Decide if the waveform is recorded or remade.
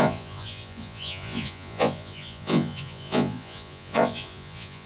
remade